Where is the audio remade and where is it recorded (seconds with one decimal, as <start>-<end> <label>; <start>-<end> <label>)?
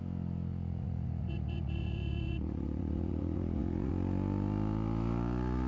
0.0-0.5 recorded; 0.5-3.9 remade; 3.9-5.7 recorded